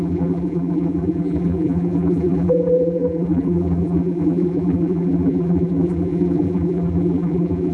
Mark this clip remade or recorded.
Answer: remade